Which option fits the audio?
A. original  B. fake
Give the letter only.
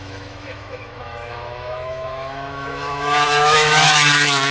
B